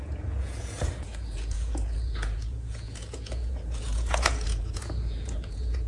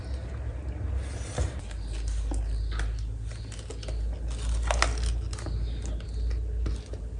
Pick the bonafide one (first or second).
second